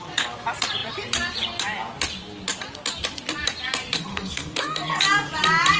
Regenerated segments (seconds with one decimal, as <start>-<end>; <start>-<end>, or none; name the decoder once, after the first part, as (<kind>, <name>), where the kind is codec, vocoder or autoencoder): 4.1-5.0 (codec, SNAC)